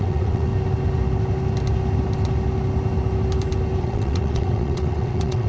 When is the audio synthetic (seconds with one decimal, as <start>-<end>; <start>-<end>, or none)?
0.0-0.5; 3.8-5.5